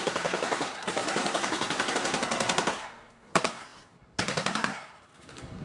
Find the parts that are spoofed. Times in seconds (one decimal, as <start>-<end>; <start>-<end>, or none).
0.0-5.6